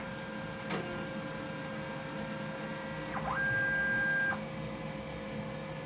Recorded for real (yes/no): yes